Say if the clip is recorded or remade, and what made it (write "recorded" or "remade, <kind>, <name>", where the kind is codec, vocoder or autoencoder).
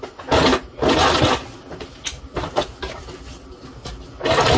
recorded